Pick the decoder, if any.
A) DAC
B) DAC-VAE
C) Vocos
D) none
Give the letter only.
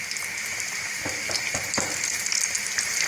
D